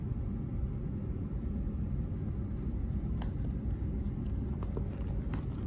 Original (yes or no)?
yes